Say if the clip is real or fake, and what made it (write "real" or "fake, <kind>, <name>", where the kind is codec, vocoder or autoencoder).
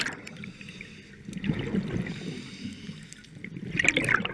real